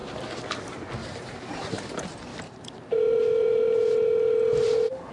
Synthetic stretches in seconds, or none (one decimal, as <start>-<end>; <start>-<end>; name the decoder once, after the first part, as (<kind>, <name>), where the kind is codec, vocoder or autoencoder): 1.0-1.9 (vocoder, BigVGAN v2); 2.3-5.1